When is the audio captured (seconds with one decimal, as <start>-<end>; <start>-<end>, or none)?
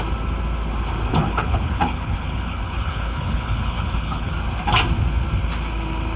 0.0-1.1; 4.3-6.2